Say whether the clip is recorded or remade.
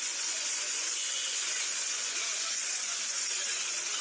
remade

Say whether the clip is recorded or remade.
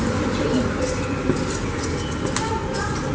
recorded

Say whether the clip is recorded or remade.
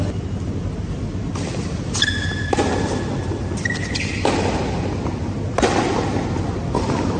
recorded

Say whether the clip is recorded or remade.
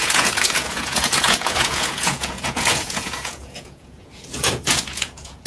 remade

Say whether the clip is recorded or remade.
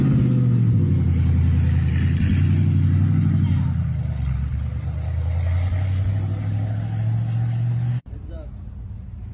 recorded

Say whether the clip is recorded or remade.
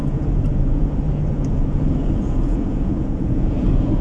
remade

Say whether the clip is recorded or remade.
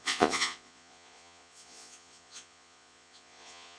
remade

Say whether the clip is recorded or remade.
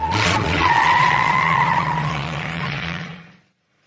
remade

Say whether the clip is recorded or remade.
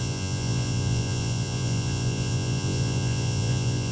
remade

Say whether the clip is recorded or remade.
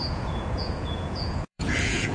remade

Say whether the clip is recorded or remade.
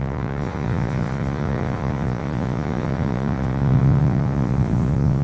remade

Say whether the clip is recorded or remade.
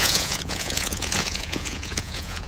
remade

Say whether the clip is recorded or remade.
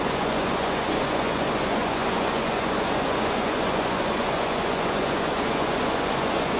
remade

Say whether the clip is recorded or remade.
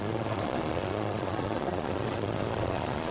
remade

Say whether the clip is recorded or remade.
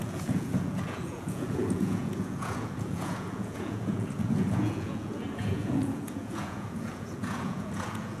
remade